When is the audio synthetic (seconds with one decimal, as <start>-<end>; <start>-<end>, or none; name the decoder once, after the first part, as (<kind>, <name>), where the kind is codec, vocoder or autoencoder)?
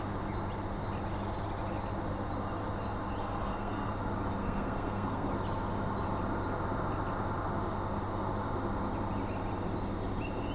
3.2-3.9 (codec, SNAC); 4.4-5.3